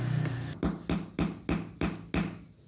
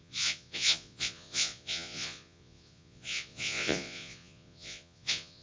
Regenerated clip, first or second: second